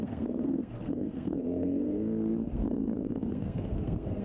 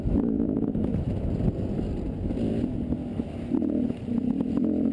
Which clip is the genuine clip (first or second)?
second